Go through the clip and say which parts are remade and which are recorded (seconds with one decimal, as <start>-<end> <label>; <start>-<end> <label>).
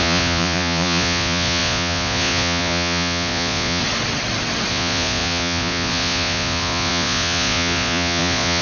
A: 0.0-3.8 remade; 3.8-4.7 recorded; 4.7-8.6 remade